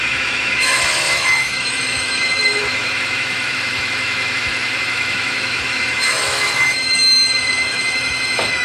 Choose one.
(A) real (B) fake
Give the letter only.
B